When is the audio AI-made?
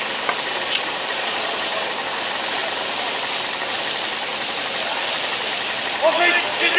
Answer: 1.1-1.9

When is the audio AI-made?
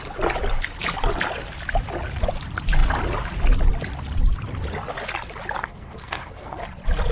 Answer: 5.6-6.6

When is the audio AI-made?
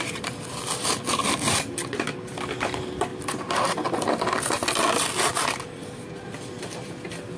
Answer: none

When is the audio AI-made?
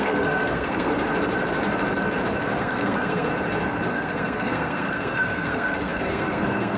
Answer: 0.0-0.9; 2.6-3.3; 3.9-6.8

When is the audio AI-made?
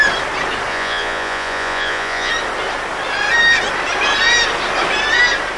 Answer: 0.7-2.3